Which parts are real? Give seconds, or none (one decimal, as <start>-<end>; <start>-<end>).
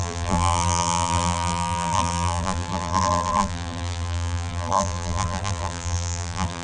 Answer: none